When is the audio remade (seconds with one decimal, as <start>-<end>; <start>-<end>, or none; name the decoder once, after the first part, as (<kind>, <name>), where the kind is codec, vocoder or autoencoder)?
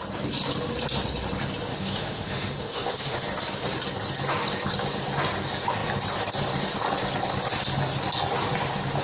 1.7-3.2 (autoencoder, DAC-VAE)